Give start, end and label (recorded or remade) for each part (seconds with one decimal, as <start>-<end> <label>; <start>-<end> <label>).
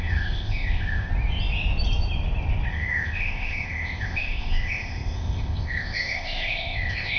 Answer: 0.0-1.1 remade; 1.1-2.7 recorded; 2.7-7.2 remade